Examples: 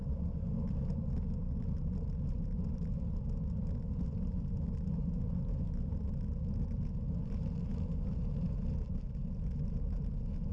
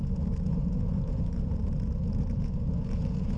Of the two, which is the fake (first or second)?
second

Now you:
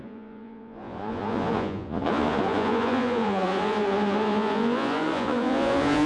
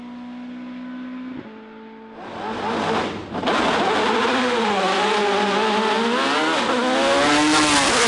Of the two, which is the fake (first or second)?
first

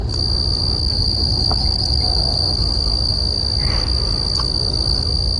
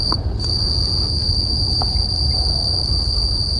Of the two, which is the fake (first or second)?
second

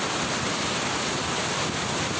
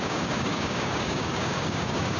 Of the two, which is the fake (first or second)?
second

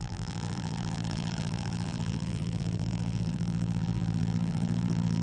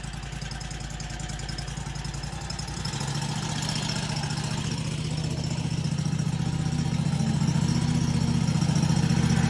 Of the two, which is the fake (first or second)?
first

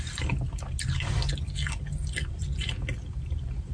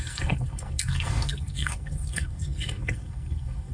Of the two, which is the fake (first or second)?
second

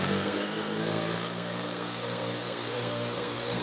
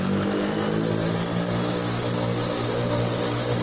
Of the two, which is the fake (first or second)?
first